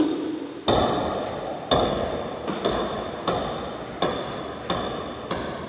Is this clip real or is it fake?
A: real